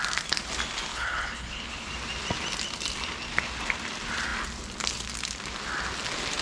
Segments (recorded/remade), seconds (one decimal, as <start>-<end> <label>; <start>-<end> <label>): 0.0-0.9 recorded; 0.9-1.9 remade; 1.9-6.4 recorded